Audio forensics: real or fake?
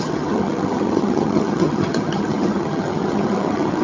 fake